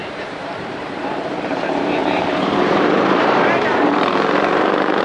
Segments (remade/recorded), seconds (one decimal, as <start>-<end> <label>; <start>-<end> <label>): 0.0-5.0 remade